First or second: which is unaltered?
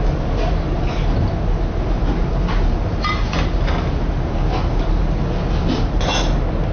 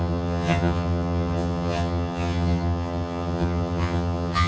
first